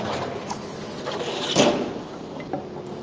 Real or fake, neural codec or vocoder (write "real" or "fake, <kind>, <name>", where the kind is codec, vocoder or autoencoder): real